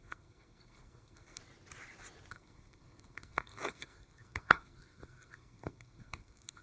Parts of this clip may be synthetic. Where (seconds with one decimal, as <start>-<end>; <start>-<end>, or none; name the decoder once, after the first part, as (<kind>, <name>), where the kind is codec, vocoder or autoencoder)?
0.0-1.4 (codec, SNAC); 2.3-6.6